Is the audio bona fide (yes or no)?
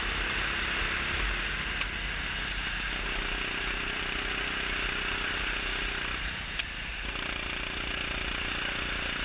yes